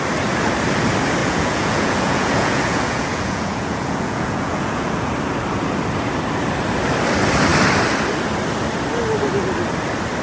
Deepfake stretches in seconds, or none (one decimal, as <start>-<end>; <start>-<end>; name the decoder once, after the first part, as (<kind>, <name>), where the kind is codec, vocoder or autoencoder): 1.2-5.1 (vocoder, Vocos)